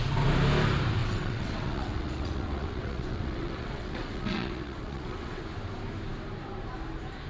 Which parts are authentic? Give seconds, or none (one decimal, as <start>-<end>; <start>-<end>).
0.0-1.0; 5.4-7.3

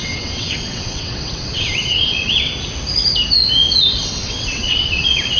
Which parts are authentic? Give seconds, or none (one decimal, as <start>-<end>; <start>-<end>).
2.5-3.9